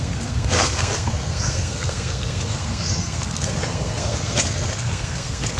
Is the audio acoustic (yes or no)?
no